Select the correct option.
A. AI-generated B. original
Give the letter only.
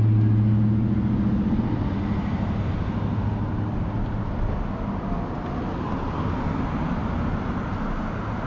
B